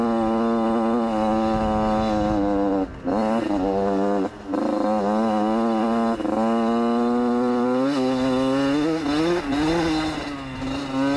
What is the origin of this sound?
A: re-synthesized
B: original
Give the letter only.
B